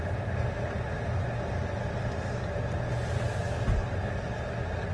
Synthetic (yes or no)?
no